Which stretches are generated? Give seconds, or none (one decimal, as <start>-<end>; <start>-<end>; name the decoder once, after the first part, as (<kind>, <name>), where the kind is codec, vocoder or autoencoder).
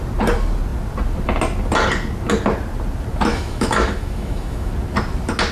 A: 3.3-4.7 (autoencoder, DAC-VAE)